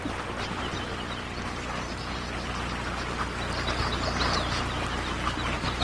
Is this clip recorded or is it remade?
recorded